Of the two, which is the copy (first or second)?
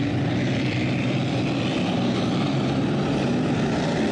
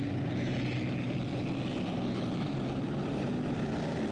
first